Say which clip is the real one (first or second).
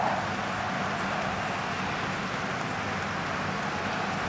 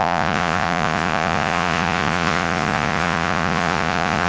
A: first